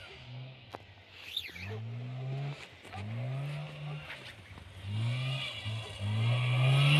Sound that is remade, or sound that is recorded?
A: recorded